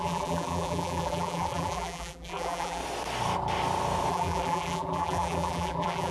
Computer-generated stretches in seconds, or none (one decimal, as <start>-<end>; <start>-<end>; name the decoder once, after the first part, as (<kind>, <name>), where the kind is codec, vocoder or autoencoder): 0.0-2.8 (vocoder, BigVGAN v2); 4.1-6.1